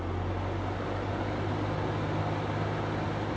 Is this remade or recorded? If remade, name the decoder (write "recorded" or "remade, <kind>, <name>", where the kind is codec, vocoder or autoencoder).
recorded